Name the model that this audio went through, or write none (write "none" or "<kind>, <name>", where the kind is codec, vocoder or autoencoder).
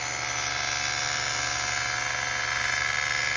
none